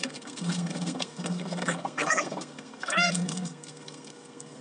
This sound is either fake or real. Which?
fake